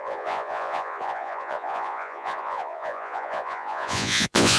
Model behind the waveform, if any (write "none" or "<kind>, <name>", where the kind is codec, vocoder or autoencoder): vocoder, Vocos